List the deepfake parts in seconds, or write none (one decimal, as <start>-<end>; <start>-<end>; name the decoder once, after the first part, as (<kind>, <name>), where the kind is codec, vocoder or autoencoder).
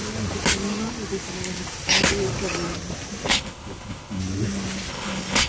3.3-4.2 (codec, HILCodec); 4.9-5.5